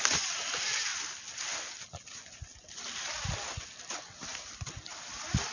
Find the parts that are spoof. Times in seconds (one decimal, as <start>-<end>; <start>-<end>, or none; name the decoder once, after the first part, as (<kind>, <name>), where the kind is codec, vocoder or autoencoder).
none